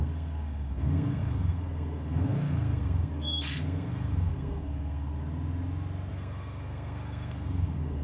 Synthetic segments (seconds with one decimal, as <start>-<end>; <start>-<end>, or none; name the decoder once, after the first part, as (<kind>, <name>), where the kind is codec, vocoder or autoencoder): 0.0-5.1 (codec, SNAC); 6.1-8.0